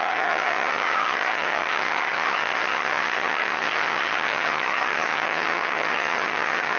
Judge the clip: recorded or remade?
remade